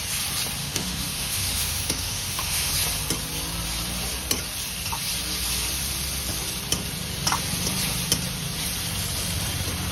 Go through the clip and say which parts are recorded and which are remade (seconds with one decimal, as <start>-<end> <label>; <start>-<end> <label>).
0.0-0.6 recorded; 0.6-2.7 remade; 2.7-9.9 recorded